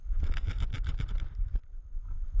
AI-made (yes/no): no